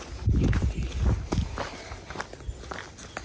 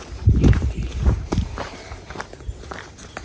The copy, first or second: second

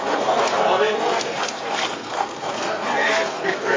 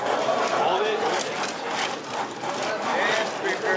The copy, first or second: first